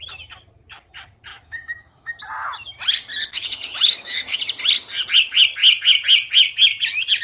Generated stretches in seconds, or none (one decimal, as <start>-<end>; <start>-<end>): 1.3-2.2; 3.3-4.4